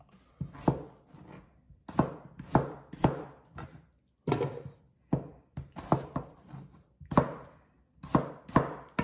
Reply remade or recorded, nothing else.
recorded